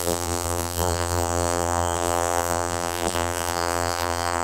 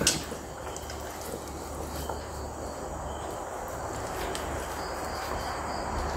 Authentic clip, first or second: second